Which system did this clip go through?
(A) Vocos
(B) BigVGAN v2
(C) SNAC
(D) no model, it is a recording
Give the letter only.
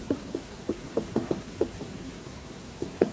C